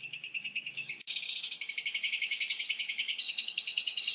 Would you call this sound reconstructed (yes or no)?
yes